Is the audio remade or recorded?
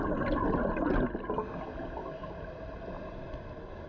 recorded